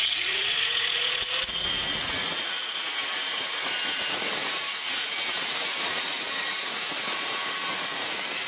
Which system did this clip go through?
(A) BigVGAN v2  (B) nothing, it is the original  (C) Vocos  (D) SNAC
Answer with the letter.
C